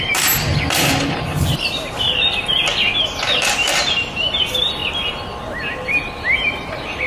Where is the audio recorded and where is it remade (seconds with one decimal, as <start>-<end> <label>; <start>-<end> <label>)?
0.0-1.3 remade; 1.3-2.9 recorded; 2.9-4.8 remade; 4.8-5.4 recorded; 5.4-7.1 remade